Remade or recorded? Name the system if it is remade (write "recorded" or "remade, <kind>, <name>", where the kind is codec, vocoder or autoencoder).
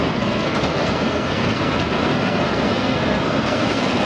remade, codec, SNAC